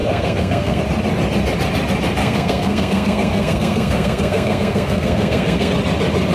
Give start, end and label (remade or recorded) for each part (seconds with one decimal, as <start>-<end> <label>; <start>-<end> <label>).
0.0-0.8 remade; 0.8-2.2 recorded; 2.2-5.7 remade; 5.7-6.3 recorded